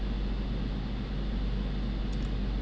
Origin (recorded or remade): recorded